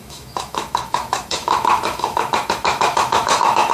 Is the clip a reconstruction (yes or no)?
yes